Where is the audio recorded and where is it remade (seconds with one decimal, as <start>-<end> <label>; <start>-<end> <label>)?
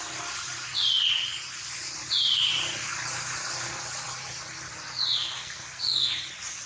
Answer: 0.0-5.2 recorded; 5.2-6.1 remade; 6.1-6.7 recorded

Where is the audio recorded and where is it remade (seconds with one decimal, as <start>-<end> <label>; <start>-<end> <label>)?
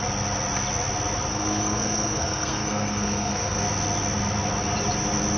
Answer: 0.0-1.3 recorded; 1.3-3.6 remade; 3.6-5.4 recorded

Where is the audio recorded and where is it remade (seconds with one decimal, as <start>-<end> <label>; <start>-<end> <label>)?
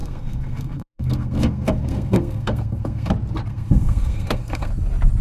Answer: 0.0-3.1 remade; 3.1-3.5 recorded; 3.5-4.7 remade; 4.7-5.2 recorded